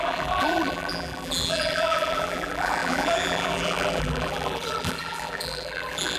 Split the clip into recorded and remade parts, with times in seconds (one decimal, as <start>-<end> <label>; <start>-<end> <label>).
0.0-6.2 remade